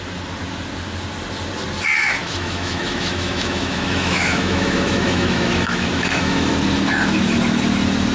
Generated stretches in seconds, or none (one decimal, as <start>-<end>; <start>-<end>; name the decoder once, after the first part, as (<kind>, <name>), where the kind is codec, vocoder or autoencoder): 2.2-6.5 (autoencoder, DAC-VAE)